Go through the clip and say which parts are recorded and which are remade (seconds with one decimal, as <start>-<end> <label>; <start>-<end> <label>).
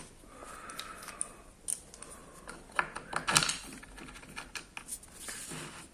0.0-5.9 recorded